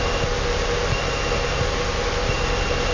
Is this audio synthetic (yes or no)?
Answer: no